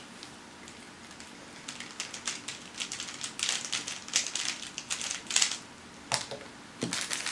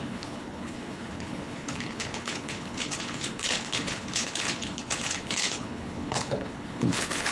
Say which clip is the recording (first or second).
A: first